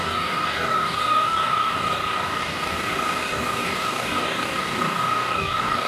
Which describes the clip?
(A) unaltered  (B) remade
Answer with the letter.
B